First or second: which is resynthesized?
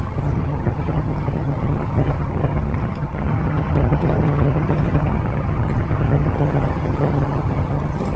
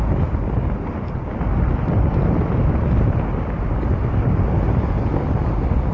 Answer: first